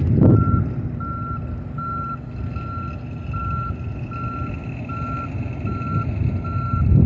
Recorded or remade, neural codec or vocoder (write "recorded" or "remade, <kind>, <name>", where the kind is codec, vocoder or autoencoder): recorded